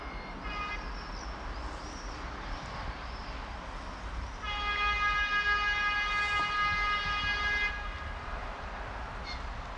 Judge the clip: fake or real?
real